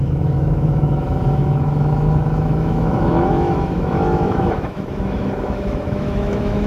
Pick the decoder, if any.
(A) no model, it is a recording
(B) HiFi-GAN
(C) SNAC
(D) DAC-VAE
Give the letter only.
D